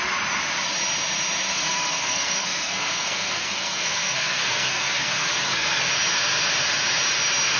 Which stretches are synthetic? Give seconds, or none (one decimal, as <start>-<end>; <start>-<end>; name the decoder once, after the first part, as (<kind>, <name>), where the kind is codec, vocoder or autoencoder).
1.5-5.9 (codec, SNAC)